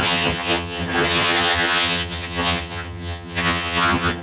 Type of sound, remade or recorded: remade